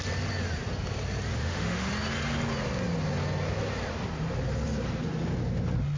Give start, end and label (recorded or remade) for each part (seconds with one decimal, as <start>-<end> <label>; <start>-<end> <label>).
0.0-1.3 recorded; 1.3-1.9 remade; 1.9-6.0 recorded